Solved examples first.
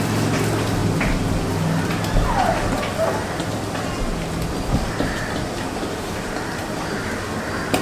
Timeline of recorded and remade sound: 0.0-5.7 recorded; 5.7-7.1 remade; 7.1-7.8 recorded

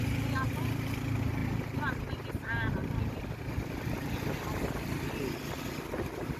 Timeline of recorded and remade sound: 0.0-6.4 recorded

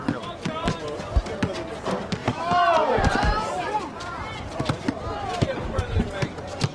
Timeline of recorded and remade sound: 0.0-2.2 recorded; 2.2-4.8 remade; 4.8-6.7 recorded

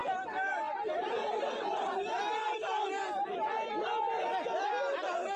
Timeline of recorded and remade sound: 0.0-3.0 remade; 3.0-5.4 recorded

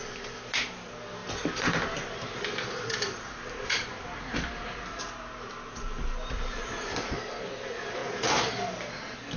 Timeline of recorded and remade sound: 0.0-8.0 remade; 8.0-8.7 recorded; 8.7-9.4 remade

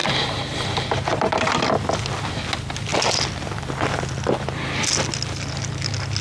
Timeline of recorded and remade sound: 0.0-1.5 remade; 1.5-6.2 recorded

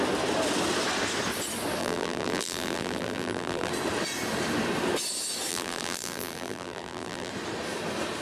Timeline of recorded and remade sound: 0.0-1.8 recorded; 1.8-3.7 remade; 3.7-5.5 recorded; 5.5-7.3 remade; 7.3-8.2 recorded